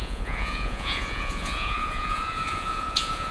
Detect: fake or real fake